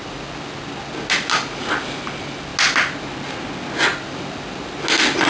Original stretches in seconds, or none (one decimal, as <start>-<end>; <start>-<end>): 0.0-5.3